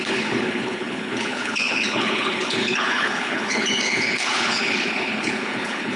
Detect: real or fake fake